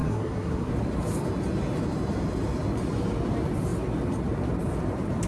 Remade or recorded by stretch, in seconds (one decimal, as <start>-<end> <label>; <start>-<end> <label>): 0.0-0.7 remade; 0.7-5.3 recorded